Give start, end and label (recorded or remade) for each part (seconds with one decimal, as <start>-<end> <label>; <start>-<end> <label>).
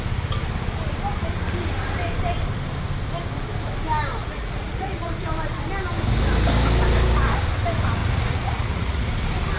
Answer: 0.0-4.2 recorded; 4.2-5.1 remade; 5.1-8.0 recorded; 8.0-9.0 remade; 9.0-9.6 recorded